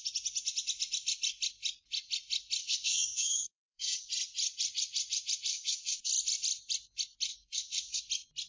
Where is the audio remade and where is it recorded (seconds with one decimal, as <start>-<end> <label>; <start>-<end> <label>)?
0.0-2.6 recorded; 2.6-4.1 remade; 4.1-5.5 recorded; 5.5-6.1 remade; 6.1-7.3 recorded; 7.3-8.0 remade; 8.0-8.5 recorded